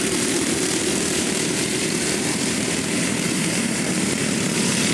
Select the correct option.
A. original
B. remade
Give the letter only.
B